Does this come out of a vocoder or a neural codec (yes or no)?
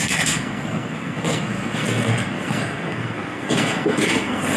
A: yes